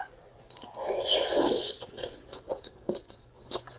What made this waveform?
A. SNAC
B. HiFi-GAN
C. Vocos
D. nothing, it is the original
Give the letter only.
C